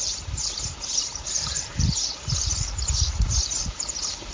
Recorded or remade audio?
remade